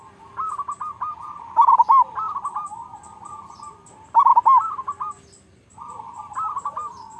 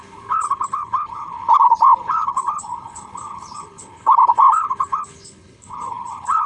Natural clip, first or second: first